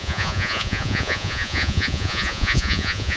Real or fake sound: fake